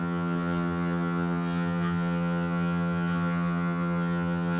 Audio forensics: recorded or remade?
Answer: remade